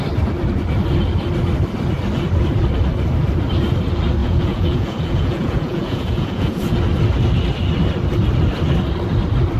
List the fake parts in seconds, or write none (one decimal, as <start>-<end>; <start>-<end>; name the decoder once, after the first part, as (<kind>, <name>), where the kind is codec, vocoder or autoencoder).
4.2-6.8 (vocoder, Vocos)